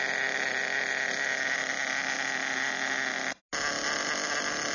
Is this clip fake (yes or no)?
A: no